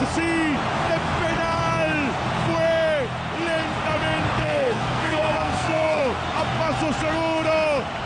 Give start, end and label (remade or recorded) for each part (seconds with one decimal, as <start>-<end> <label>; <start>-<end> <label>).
0.0-4.4 recorded; 4.4-6.0 remade; 6.0-8.1 recorded